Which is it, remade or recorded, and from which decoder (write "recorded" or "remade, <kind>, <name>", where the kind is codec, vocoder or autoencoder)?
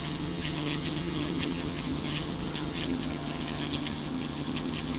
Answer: remade, vocoder, HiFi-GAN